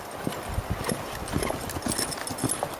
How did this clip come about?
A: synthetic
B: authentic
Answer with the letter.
B